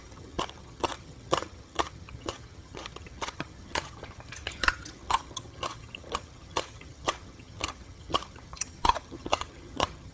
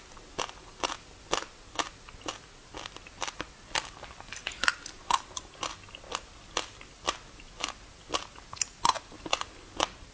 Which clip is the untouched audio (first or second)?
second